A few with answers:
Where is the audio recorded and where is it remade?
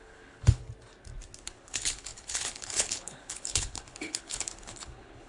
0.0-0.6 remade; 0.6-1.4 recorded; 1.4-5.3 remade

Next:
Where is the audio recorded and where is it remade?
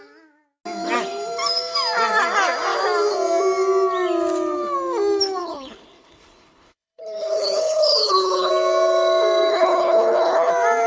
0.0-5.4 recorded; 5.4-8.5 remade; 8.5-9.5 recorded; 9.5-10.5 remade; 10.5-10.9 recorded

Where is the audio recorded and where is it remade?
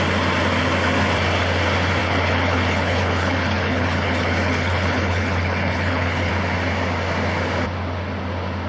0.0-2.0 recorded; 2.0-6.3 remade; 6.3-8.7 recorded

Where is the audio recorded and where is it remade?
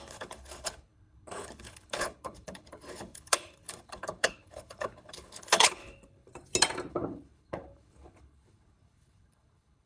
0.0-6.3 remade; 6.3-6.9 recorded; 6.9-9.9 remade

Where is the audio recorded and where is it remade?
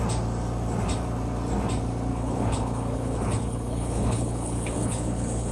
0.0-2.1 recorded; 2.1-5.5 remade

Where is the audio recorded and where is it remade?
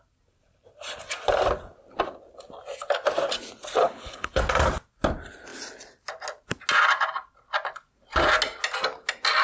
0.0-3.8 recorded; 3.8-4.4 remade; 4.4-9.4 recorded